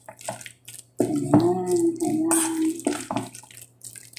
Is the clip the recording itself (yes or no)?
yes